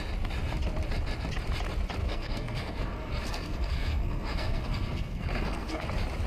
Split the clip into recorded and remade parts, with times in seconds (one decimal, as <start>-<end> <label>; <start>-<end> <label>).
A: 0.0-2.0 recorded; 2.0-5.8 remade; 5.8-6.3 recorded